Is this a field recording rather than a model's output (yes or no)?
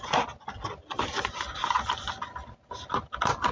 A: yes